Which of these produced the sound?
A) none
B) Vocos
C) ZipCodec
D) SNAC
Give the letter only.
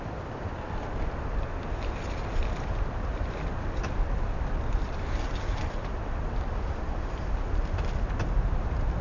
A